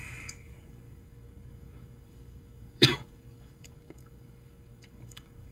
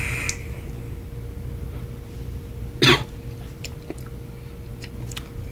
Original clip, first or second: second